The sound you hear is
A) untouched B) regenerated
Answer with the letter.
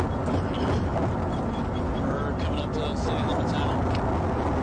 A